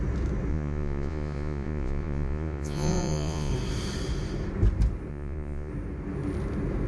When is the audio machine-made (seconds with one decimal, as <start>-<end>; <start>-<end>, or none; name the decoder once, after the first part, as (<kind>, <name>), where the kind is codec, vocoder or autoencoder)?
0.5-3.5 (vocoder, Vocos); 5.1-5.7